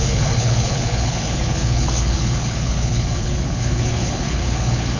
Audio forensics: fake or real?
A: fake